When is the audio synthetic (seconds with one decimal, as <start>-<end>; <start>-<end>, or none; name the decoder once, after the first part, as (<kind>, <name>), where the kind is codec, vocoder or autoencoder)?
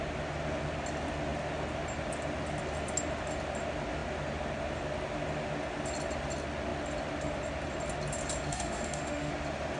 8.5-9.3 (autoencoder, DAC-VAE)